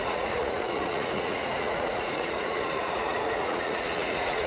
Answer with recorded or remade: remade